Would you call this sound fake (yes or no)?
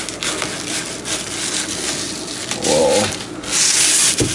no